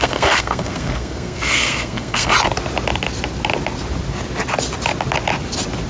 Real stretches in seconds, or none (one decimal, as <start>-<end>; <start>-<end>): 2.3-5.9